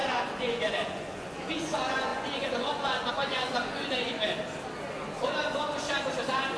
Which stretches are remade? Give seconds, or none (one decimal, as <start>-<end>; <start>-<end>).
0.0-4.0